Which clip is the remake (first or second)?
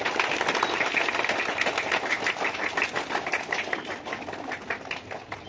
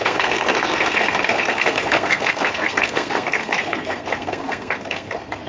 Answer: second